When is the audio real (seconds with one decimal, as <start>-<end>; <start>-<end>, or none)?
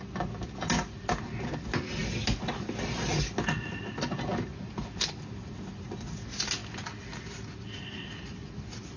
0.0-9.0